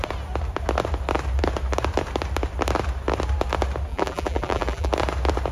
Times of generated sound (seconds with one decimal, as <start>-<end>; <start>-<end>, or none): 3.9-4.9